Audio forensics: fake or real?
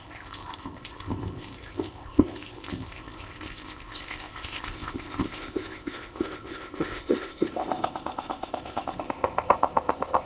fake